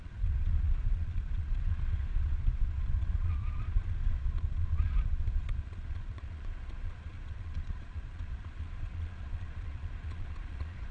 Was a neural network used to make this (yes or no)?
yes